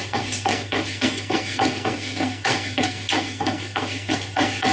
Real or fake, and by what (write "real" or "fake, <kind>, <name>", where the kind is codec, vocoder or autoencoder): fake, codec, SNAC